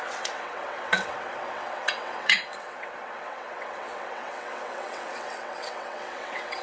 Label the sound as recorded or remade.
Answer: remade